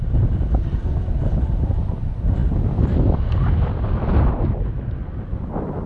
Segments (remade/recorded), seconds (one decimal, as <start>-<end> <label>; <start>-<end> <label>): 0.0-5.9 recorded